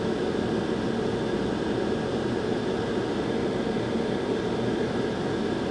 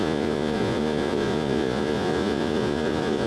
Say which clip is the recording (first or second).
first